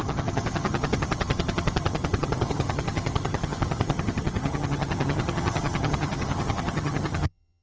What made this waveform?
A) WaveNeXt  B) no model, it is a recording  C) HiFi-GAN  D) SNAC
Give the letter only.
C